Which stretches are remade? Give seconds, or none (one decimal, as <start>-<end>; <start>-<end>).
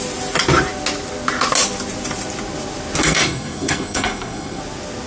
3.0-4.6